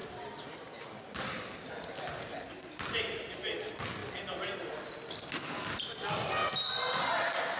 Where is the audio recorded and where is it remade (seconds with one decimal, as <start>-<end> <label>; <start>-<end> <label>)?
0.0-3.0 remade; 3.0-7.6 recorded